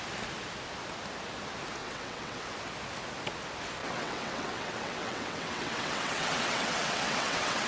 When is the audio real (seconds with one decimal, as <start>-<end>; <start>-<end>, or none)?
0.0-1.8; 2.4-3.8